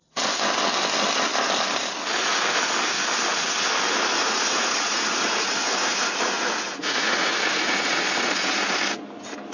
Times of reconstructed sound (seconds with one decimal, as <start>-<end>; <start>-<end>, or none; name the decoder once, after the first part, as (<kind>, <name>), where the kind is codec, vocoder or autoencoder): 4.2-8.8 (vocoder, Vocos)

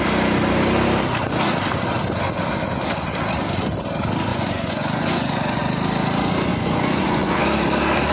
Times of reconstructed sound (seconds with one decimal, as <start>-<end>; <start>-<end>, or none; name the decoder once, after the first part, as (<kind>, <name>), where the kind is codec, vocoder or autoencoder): 4.3-5.6 (vocoder, Vocos); 6.5-7.4

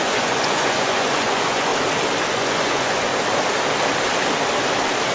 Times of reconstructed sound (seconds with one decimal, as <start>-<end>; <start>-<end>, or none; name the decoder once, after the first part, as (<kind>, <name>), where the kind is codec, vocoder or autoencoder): 0.0-1.7 (vocoder, Vocos); 2.3-3.1

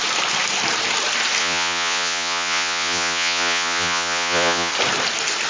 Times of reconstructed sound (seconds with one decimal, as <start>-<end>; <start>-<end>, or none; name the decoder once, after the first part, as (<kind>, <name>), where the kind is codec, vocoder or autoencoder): 1.4-4.7 (vocoder, Vocos)

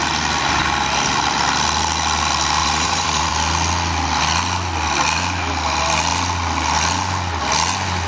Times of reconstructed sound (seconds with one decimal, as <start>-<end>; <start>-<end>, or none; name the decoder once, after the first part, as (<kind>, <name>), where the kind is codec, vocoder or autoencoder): 2.6-3.3 (vocoder, Vocos)

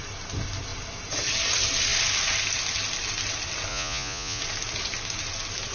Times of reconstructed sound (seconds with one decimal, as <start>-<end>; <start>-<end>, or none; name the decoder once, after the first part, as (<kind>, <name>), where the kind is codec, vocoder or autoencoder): 3.7-4.4 (vocoder, Vocos)

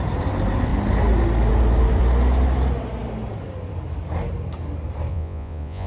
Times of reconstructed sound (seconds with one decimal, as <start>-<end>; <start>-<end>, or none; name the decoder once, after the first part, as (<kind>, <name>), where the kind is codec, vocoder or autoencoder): 5.1-5.9 (vocoder, Vocos)